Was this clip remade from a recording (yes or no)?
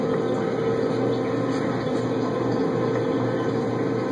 no